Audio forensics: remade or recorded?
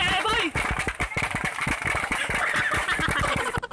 recorded